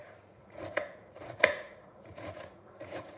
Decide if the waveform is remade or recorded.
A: remade